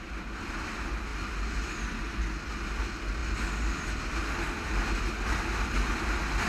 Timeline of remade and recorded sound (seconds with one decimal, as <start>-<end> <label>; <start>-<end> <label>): 0.0-6.5 recorded